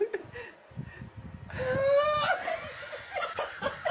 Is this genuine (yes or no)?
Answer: yes